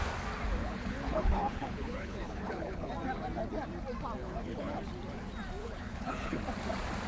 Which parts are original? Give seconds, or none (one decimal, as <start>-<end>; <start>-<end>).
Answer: 0.0-0.6; 2.9-4.2; 4.8-5.6; 6.4-7.1